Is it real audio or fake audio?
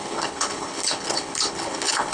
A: fake